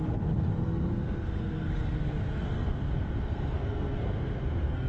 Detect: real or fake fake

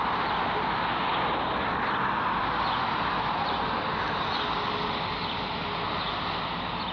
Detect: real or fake real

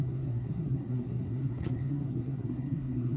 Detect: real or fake fake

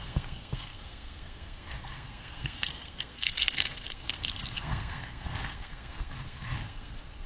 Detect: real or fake fake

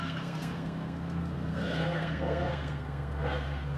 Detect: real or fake fake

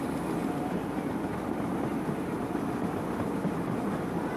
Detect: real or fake real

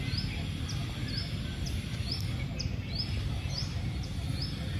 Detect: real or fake real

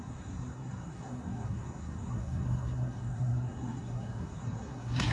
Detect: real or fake fake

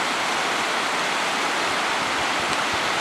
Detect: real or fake real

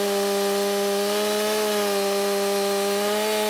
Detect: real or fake real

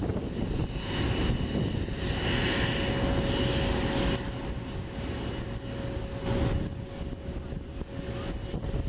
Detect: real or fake real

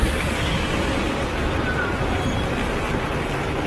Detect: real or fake real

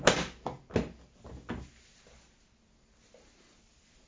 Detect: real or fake real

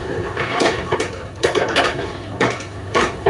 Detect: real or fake fake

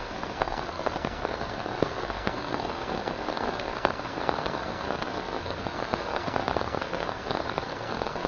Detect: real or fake fake